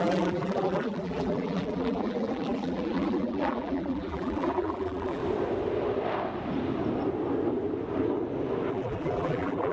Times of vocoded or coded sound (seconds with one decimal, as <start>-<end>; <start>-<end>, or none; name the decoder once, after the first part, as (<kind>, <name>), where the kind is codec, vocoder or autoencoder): 0.0-5.2 (vocoder, BigVGAN v2); 8.7-9.7